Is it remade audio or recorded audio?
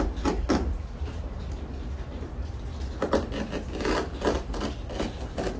recorded